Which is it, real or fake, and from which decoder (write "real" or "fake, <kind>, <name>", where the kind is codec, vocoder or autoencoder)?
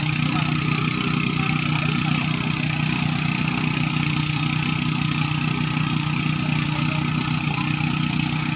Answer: real